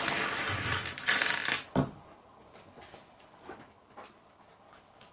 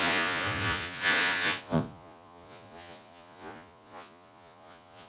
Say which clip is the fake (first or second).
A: second